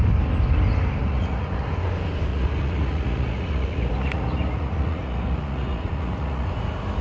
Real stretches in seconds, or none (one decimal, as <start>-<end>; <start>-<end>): 0.0-1.0; 1.7-2.3; 6.5-7.0